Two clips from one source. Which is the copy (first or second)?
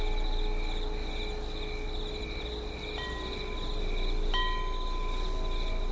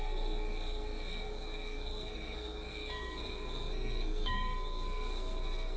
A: second